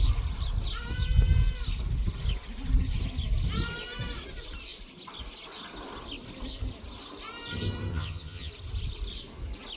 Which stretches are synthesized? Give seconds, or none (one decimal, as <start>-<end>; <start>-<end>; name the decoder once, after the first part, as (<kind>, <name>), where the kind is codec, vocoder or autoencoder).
7.9-8.5 (vocoder, HiFi-GAN)